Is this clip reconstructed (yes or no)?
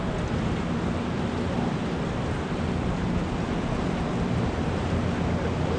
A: no